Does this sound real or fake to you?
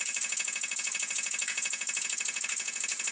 fake